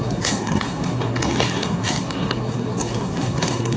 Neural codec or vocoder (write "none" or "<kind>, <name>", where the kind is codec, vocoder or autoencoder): codec, SNAC